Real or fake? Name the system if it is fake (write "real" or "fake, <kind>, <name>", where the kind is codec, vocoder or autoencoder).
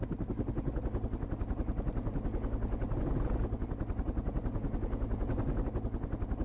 real